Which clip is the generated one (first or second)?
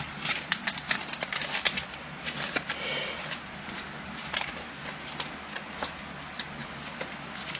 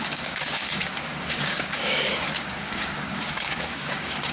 second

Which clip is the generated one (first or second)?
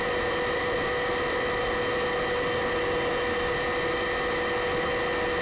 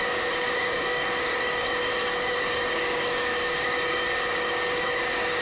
second